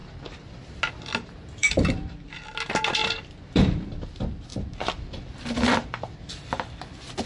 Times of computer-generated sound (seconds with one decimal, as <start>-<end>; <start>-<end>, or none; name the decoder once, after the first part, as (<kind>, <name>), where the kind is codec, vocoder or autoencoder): 1.6-2.3 (vocoder, BigVGAN v2); 3.0-4.1; 4.5-6.8